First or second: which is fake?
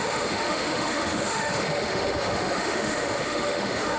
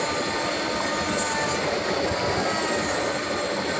first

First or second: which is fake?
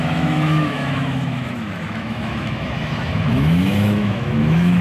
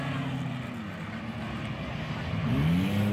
first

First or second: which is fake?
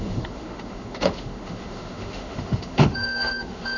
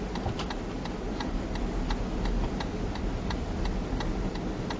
first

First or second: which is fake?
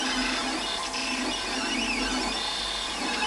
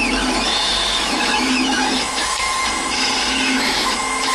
second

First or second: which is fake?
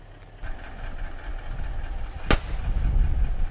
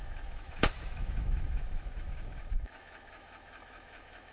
second